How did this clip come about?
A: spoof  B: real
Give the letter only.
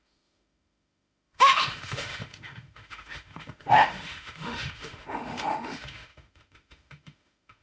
A